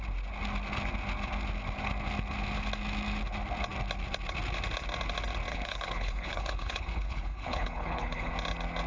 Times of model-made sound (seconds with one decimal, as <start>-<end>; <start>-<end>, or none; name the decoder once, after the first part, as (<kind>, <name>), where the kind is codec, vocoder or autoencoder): 5.5-8.3 (codec, HILCodec)